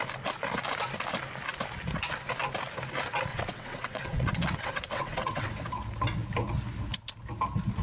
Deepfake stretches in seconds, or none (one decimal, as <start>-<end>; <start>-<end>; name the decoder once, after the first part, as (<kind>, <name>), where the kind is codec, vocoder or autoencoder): 3.3-5.5 (vocoder, WaveNeXt)